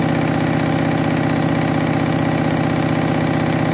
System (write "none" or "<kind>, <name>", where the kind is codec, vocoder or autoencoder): none